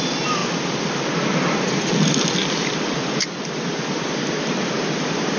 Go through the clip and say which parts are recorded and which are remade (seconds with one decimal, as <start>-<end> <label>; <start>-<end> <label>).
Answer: 0.0-5.4 remade